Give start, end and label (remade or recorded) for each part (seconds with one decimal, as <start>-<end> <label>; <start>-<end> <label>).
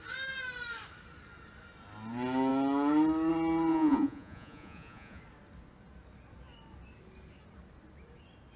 0.0-3.7 recorded; 3.7-5.2 remade; 5.2-8.6 recorded